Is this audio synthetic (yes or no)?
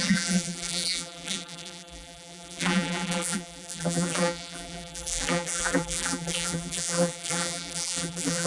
yes